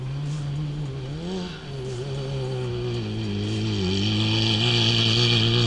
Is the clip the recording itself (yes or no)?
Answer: yes